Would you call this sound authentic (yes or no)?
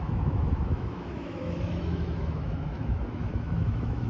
no